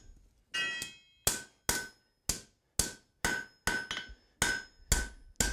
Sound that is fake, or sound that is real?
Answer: real